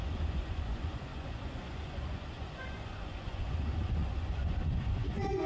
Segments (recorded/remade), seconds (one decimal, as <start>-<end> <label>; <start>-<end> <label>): 0.0-5.5 remade